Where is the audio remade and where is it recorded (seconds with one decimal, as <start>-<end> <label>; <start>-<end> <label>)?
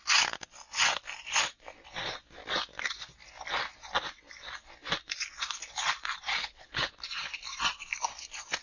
0.0-6.4 recorded; 6.4-6.9 remade; 6.9-8.6 recorded